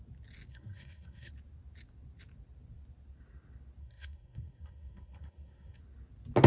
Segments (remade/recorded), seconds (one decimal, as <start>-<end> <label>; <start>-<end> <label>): 0.0-0.5 recorded; 0.5-1.3 remade; 1.3-3.8 recorded; 3.8-5.8 remade; 5.8-6.5 recorded